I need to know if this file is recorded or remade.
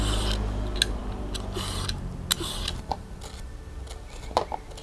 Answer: recorded